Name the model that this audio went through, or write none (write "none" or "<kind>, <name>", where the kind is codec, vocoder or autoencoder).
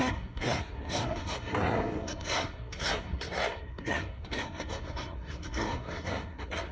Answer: codec, SNAC